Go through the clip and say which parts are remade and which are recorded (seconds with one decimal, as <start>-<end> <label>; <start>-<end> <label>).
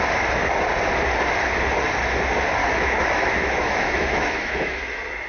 0.0-2.6 recorded; 2.6-4.8 remade; 4.8-5.3 recorded